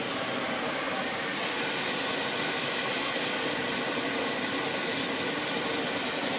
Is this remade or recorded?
recorded